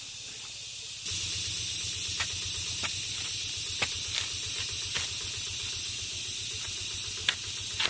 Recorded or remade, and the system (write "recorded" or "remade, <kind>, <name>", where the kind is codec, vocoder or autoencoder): recorded